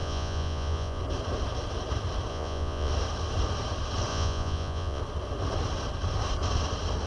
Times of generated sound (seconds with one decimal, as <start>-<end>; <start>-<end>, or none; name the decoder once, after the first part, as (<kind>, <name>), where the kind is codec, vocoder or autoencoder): 0.0-1.0 (vocoder, Vocos); 2.3-2.9; 4.1-5.0